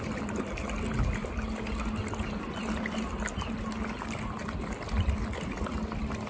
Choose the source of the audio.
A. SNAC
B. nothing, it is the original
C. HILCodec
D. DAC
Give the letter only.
B